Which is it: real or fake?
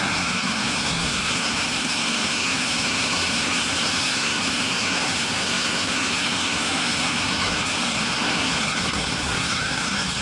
fake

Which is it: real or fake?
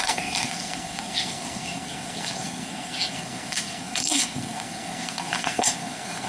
fake